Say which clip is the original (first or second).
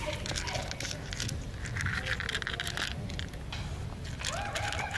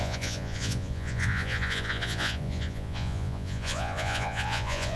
first